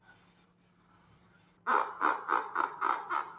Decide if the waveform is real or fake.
real